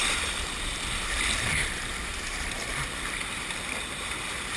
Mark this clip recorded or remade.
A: remade